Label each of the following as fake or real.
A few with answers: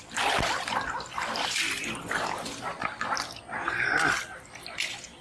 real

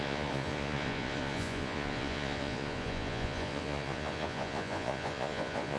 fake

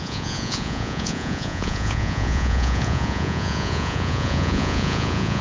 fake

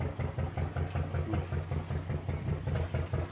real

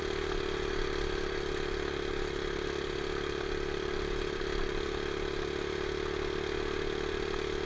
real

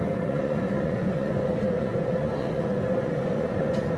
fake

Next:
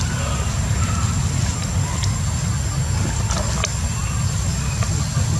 real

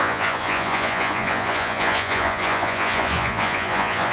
fake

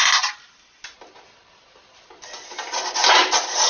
real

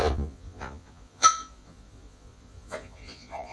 fake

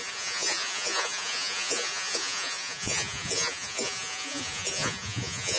fake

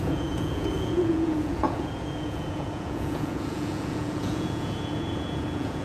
fake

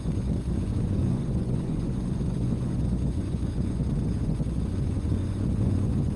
fake